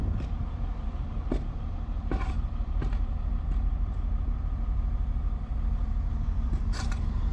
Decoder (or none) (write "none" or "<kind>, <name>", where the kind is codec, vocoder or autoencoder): vocoder, BigVGAN v2